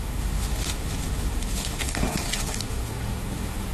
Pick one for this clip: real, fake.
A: fake